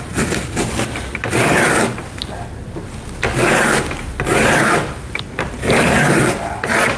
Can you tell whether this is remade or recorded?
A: recorded